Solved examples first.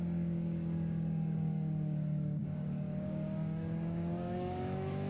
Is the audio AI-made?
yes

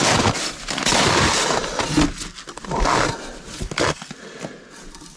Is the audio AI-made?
no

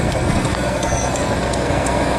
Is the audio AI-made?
yes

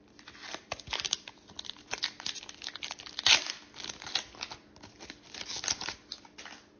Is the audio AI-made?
no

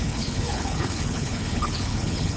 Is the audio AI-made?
yes